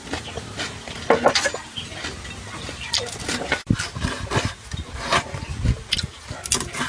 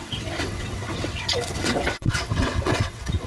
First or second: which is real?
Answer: first